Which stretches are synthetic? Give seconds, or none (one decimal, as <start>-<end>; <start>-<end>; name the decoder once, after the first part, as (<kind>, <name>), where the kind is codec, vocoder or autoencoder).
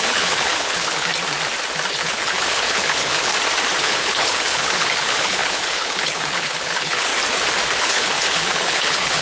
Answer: 0.0-1.1 (codec, HILCodec); 1.9-3.3; 3.8-7.1; 7.8-9.2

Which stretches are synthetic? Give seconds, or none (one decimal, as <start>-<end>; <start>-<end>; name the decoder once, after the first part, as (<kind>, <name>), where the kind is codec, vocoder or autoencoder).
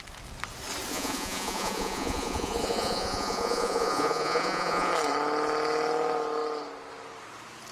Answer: 0.9-4.9 (vocoder, Vocos)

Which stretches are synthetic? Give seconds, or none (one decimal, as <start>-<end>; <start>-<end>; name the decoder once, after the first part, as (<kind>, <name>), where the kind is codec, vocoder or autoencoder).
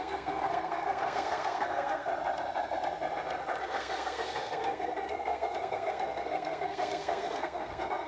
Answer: 0.0-2.1 (codec, SNAC); 3.6-8.1